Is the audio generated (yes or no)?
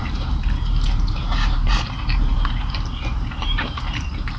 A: yes